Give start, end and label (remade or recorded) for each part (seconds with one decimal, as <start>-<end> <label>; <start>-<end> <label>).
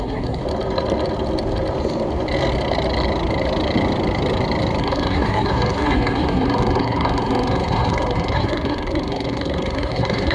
0.0-0.4 remade; 0.4-4.8 recorded; 4.8-10.3 remade